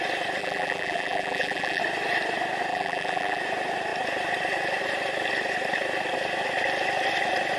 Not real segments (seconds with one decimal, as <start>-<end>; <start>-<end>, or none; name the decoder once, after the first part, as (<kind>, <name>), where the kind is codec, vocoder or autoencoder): 0.4-1.8 (vocoder, BigVGAN v2); 2.7-3.4